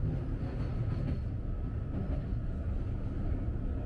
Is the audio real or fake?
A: real